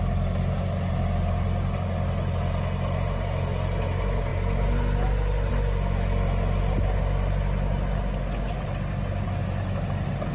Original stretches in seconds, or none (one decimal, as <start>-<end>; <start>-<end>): 0.0-10.3